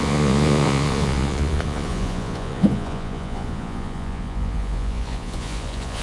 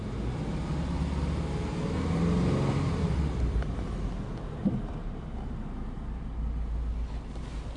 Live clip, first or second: second